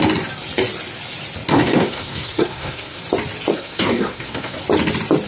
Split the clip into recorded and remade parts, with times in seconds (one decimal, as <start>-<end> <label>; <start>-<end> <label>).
0.0-1.5 recorded; 1.5-3.0 remade; 3.0-3.5 recorded; 3.5-4.6 remade; 4.6-5.3 recorded